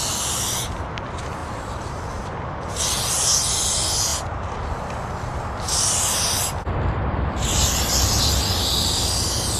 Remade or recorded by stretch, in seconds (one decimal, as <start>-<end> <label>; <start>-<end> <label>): 0.0-1.4 recorded; 1.4-2.0 remade; 2.0-9.6 recorded